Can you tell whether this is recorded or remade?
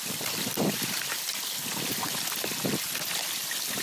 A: recorded